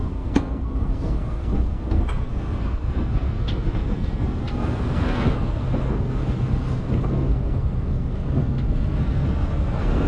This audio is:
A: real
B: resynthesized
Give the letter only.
B